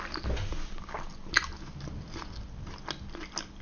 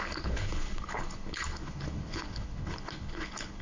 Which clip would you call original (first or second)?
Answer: first